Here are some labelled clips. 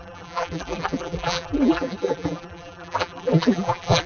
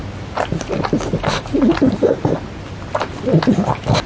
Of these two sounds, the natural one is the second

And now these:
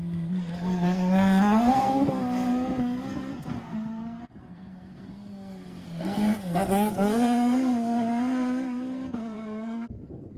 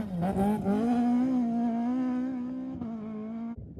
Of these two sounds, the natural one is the second